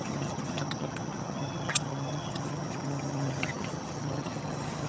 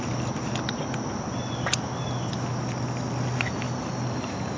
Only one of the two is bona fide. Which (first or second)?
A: second